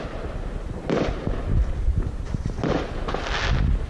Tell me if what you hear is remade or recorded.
recorded